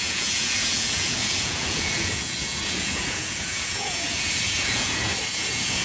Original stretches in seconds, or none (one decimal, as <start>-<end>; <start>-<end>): none